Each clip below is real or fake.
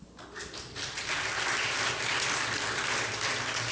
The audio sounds real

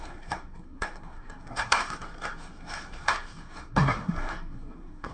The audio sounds fake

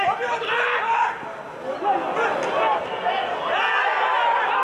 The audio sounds real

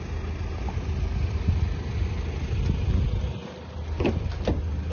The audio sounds real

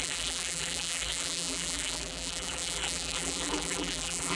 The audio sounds fake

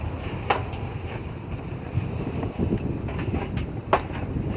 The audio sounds real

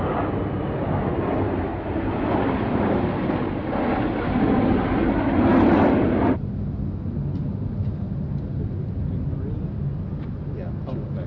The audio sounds real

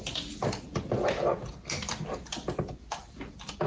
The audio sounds real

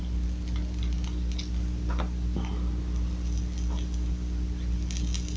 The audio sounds real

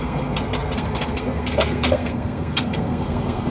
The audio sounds fake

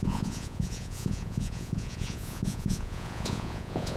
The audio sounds fake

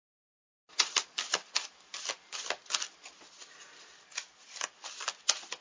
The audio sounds real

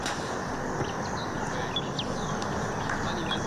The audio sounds real